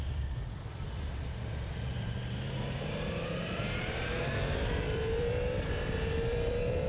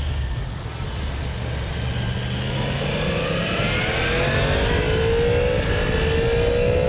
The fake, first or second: first